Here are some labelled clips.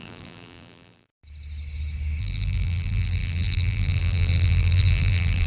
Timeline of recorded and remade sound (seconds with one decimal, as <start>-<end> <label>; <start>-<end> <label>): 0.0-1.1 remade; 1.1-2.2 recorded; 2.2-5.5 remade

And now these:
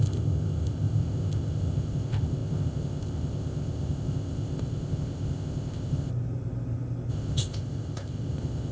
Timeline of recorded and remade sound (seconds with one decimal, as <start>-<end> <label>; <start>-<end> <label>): 0.0-6.1 remade; 6.1-7.1 recorded; 7.1-8.7 remade

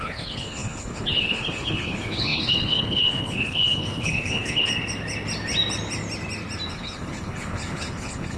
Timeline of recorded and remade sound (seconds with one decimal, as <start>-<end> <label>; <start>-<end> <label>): 0.0-4.7 remade; 4.7-6.7 recorded; 6.7-8.4 remade